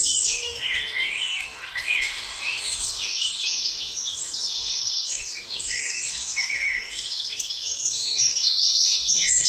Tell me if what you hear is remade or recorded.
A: remade